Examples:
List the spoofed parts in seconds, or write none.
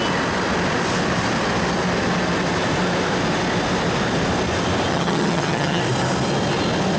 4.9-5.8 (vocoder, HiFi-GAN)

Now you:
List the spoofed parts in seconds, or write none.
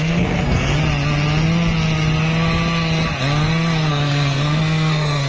0.0-0.7 (codec, SNAC); 3.9-5.3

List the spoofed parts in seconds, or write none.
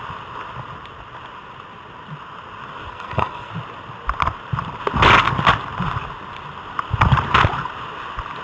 2.9-3.5 (codec, SNAC)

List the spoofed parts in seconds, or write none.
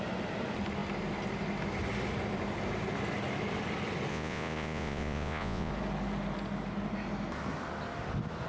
4.1-5.7 (vocoder, Vocos)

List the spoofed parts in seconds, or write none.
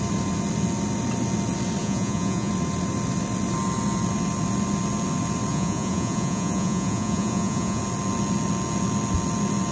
1.8-2.5 (vocoder, Vocos); 5.5-7.8